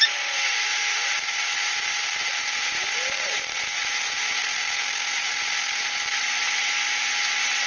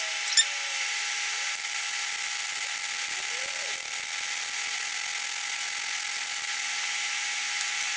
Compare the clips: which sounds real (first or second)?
second